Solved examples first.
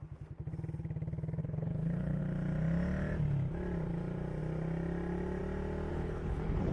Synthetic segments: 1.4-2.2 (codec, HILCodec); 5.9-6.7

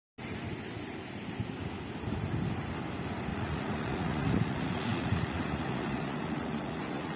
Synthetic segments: 3.3-7.2 (vocoder, Vocos)

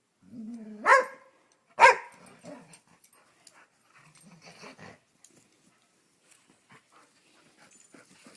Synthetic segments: none